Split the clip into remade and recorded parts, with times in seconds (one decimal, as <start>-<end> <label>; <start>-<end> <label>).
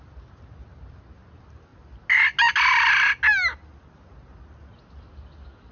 0.0-5.7 recorded